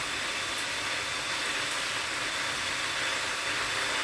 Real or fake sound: real